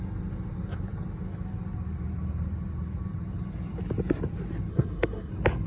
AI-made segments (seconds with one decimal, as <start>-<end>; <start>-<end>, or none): 4.7-5.3